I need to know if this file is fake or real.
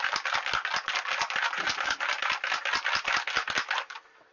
real